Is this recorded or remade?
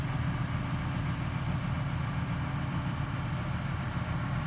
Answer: recorded